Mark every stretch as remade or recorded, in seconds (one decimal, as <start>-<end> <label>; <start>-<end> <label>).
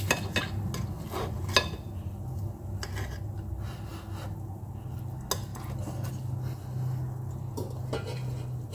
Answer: 0.0-8.7 recorded